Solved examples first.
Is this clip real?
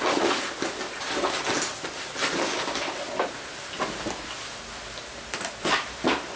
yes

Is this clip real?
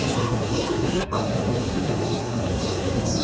no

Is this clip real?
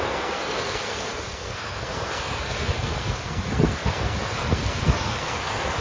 no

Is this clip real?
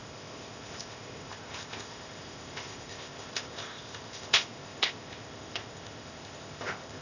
no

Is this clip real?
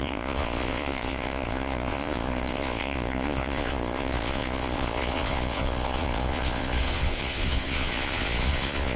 no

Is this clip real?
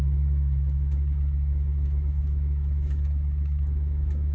no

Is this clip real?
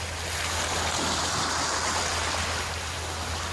yes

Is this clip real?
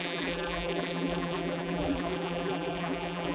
no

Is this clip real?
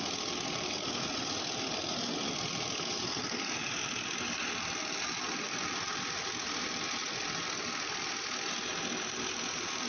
yes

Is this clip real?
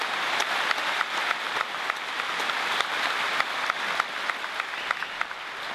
yes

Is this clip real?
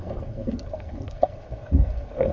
no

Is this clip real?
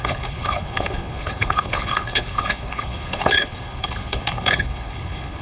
no